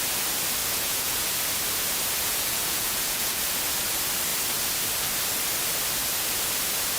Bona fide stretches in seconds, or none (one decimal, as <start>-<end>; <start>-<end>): 0.0-0.6; 1.2-2.2; 3.4-7.0